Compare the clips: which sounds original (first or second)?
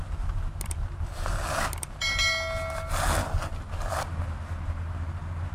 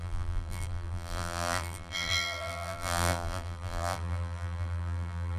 first